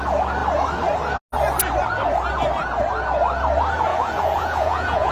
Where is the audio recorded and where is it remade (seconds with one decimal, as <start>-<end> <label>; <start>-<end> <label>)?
0.0-3.9 recorded; 3.9-5.1 remade